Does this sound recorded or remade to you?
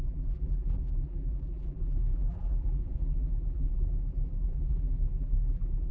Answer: remade